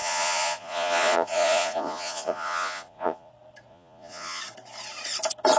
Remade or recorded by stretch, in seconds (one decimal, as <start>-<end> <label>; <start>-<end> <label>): 0.0-3.3 remade; 3.3-3.7 recorded; 3.7-4.4 remade; 4.4-5.6 recorded